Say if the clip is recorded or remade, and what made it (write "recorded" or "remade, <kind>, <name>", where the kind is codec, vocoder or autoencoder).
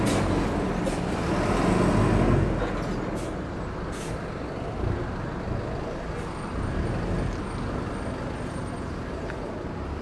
recorded